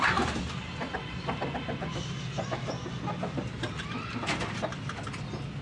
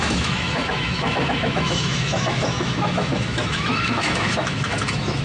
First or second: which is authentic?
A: first